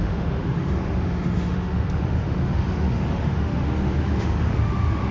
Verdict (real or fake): fake